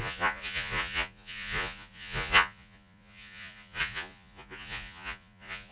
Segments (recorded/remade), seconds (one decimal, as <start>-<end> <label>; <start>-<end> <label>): 0.0-5.7 remade